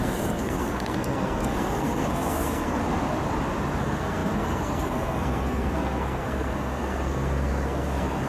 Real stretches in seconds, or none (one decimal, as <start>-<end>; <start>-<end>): 2.8-3.8